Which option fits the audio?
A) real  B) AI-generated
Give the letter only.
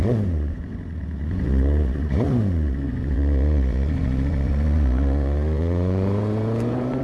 B